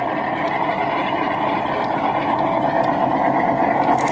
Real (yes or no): yes